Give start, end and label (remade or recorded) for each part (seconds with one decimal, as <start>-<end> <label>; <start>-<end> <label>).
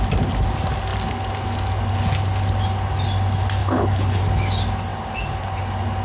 0.0-3.6 recorded; 3.6-4.2 remade; 4.2-6.0 recorded